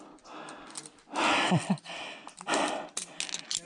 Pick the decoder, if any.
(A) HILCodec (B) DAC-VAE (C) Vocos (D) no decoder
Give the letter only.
D